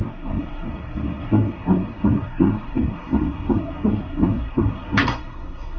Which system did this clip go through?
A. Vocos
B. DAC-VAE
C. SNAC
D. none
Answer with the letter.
C